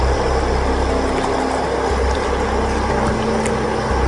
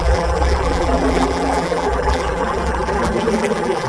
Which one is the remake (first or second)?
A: second